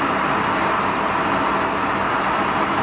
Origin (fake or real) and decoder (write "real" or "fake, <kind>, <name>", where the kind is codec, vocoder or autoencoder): real